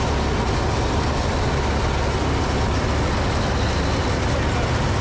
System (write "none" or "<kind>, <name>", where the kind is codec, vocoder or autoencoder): none